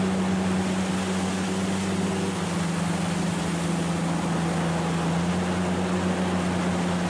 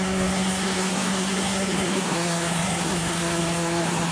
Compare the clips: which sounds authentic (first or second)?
first